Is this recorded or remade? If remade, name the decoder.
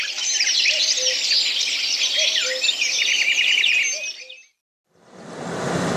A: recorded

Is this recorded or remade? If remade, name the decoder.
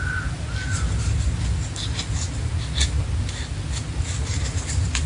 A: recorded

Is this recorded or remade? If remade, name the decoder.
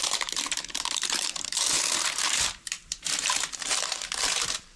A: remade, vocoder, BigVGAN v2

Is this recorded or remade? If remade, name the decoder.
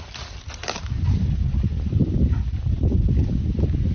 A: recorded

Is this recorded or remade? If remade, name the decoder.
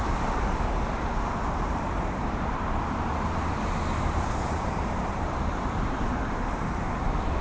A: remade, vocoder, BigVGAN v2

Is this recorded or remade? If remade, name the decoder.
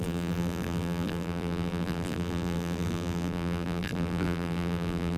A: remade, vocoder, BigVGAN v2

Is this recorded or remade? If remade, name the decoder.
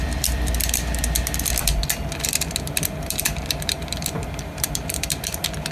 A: remade, vocoder, BigVGAN v2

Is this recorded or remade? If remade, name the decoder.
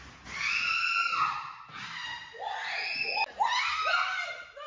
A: recorded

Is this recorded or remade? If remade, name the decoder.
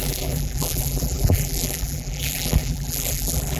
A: remade, vocoder, BigVGAN v2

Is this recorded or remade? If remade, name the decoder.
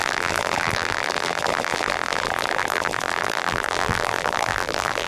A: remade, vocoder, BigVGAN v2